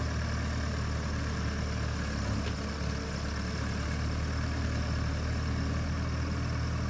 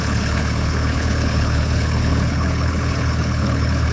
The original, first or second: first